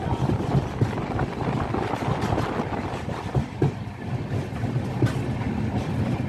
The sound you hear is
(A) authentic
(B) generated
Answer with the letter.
A